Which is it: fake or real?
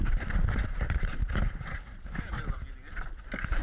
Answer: real